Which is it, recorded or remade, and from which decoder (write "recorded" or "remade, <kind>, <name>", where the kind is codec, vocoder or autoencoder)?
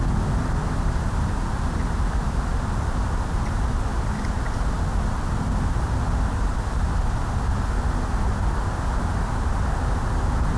recorded